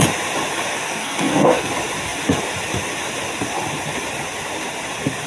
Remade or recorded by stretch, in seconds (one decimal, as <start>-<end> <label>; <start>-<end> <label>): 0.0-0.7 recorded; 0.7-1.7 remade; 1.7-5.3 recorded